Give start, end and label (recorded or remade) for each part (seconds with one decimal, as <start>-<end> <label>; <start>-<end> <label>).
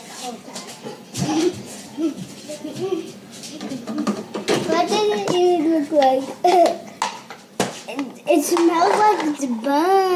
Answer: 0.0-10.2 recorded